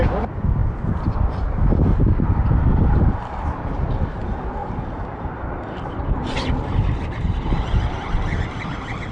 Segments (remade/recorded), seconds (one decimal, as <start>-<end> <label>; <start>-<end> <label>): 0.0-4.6 recorded; 4.6-6.0 remade; 6.0-9.1 recorded